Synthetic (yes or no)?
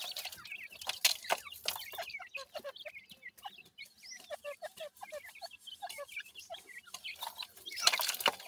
no